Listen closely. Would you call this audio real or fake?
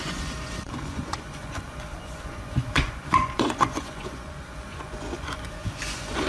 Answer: fake